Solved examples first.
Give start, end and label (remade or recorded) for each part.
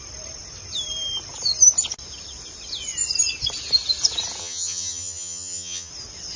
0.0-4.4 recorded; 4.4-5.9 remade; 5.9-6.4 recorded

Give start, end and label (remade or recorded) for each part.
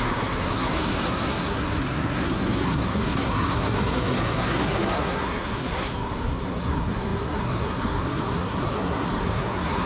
0.0-9.9 remade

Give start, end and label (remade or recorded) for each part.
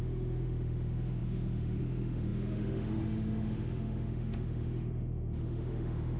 0.0-6.2 remade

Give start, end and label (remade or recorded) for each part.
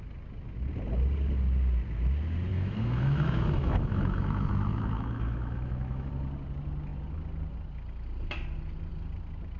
0.0-2.5 recorded; 2.5-6.1 remade; 6.1-9.6 recorded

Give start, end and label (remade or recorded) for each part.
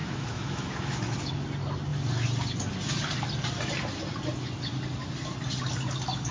0.0-1.3 remade; 1.3-6.3 recorded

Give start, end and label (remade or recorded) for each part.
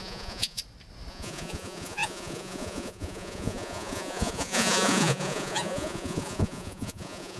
0.0-0.6 remade; 0.6-1.1 recorded; 1.1-7.4 remade